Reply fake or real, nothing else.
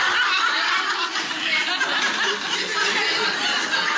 real